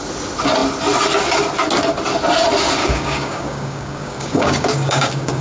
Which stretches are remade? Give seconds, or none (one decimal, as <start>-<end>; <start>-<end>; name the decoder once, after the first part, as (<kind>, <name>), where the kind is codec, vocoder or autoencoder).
2.8-5.4 (codec, DAC)